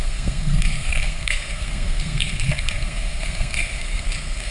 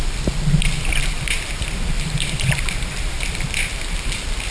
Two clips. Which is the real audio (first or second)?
second